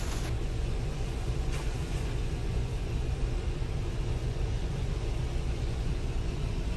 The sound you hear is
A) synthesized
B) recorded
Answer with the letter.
A